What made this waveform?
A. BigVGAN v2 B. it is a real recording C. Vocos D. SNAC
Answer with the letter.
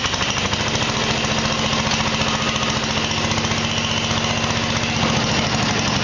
B